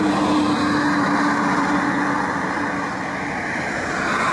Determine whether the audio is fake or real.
real